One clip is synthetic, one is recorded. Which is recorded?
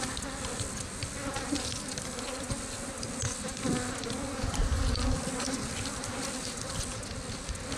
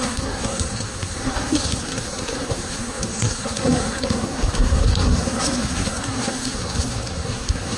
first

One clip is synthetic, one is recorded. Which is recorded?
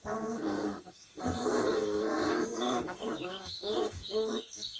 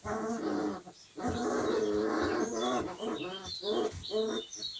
second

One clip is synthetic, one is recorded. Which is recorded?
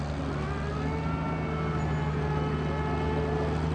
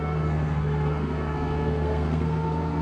first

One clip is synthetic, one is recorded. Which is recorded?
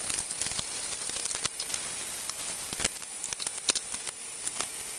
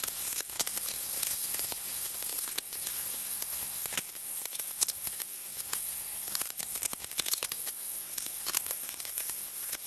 first